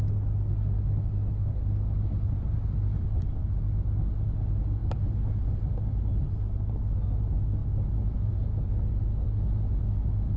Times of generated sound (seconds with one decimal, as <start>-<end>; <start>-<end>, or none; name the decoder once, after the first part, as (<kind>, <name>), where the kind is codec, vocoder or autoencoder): none